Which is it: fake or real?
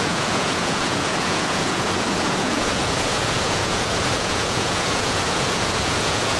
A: fake